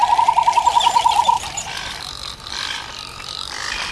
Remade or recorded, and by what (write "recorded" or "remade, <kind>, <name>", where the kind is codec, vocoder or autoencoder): recorded